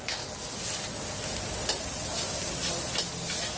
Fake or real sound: real